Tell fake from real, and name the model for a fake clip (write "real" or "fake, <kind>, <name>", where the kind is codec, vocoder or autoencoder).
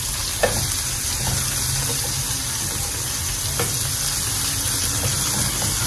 real